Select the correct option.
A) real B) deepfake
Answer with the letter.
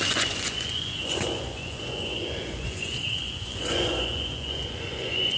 B